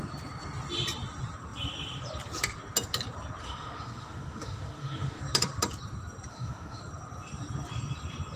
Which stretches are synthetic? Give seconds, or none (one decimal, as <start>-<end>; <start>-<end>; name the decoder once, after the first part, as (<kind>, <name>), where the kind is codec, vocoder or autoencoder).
3.4-5.2 (autoencoder, DAC-VAE); 6.3-6.8